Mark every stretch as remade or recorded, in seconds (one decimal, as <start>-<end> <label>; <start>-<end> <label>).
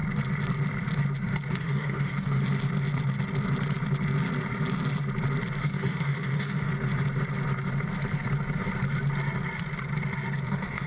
0.0-1.5 recorded; 1.5-2.4 remade; 2.4-5.6 recorded; 5.6-6.7 remade; 6.7-10.5 recorded; 10.5-10.9 remade